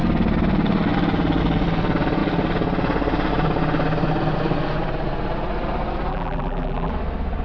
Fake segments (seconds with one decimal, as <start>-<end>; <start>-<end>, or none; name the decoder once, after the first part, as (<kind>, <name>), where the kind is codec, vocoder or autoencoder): 6.1-6.9 (vocoder, BigVGAN v2)